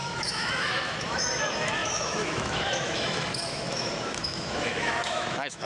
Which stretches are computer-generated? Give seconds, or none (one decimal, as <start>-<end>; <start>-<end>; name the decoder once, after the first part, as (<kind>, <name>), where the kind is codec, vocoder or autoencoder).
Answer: 0.0-5.6 (autoencoder, DAC-VAE)